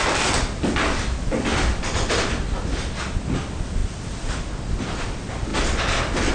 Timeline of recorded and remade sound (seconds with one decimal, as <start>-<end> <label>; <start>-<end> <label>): 0.0-1.5 recorded; 1.5-2.1 remade; 2.1-3.8 recorded; 3.8-4.7 remade; 4.7-5.5 recorded; 5.5-6.3 remade